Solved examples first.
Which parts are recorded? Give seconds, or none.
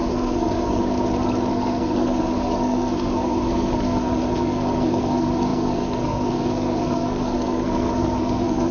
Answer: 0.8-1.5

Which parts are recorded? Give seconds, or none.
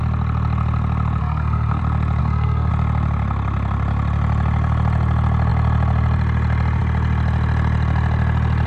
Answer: 0.0-1.2; 1.8-2.2; 2.7-8.7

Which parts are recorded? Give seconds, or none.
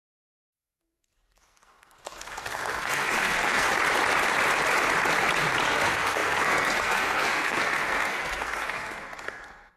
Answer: 3.7-5.7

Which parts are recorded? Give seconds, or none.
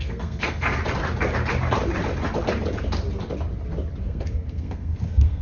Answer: 0.8-4.0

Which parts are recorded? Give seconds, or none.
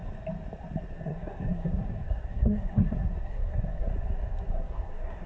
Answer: 0.0-0.9; 3.9-4.5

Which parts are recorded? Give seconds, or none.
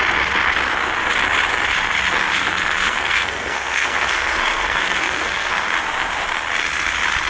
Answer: 0.0-2.3; 5.6-7.3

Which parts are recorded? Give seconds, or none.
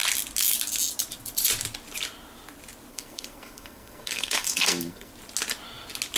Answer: 0.0-2.9; 5.1-6.2